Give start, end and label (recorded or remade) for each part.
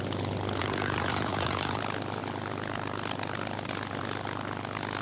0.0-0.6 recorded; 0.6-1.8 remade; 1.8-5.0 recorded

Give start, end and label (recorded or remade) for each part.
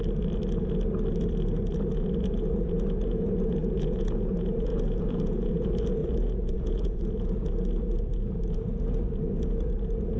0.0-3.6 recorded; 3.6-4.3 remade; 4.3-4.7 recorded; 4.7-5.5 remade; 5.5-6.0 recorded; 6.0-7.0 remade; 7.0-10.2 recorded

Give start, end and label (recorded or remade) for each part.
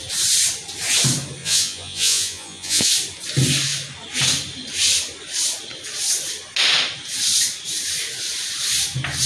0.0-1.4 recorded; 1.4-2.9 remade; 2.9-9.3 recorded